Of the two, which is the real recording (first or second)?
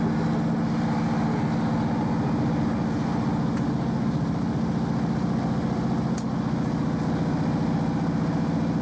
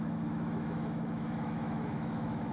first